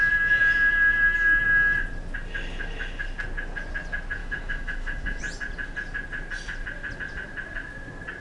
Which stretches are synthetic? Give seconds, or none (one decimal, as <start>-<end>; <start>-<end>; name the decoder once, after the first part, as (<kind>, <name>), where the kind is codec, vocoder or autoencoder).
4.2-5.2 (autoencoder, DAC-VAE)